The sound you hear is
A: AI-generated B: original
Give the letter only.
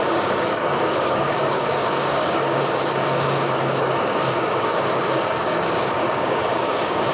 A